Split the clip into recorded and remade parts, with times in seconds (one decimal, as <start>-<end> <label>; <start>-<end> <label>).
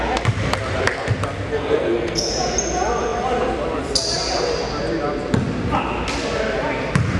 0.0-1.5 recorded; 1.5-2.3 remade; 2.3-7.2 recorded